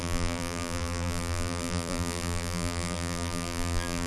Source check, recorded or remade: remade